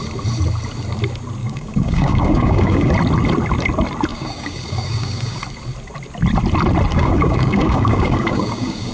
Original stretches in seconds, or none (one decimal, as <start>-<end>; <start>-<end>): 0.0-1.4; 2.9-4.1; 5.4-6.9